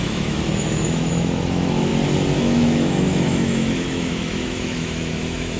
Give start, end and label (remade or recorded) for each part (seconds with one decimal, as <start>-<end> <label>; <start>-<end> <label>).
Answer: 0.0-1.9 remade; 1.9-2.4 recorded; 2.4-5.6 remade